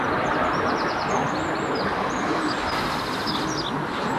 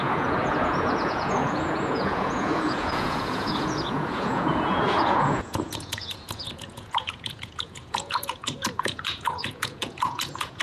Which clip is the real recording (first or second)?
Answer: first